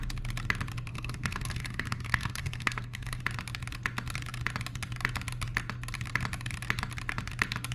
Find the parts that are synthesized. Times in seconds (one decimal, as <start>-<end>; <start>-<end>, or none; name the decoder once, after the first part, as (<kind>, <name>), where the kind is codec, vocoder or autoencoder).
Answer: 0.9-3.2 (codec, SNAC)